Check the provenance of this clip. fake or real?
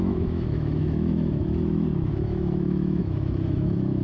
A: fake